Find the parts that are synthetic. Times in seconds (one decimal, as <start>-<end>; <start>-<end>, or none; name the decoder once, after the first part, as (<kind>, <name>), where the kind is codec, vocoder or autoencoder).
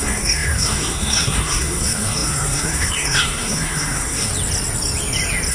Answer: 0.0-4.3 (codec, SNAC)